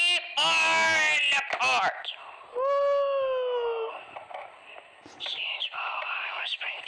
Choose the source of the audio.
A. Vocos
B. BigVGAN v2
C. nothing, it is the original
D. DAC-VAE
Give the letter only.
C